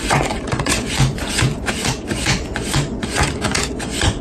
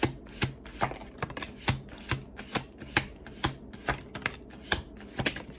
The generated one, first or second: first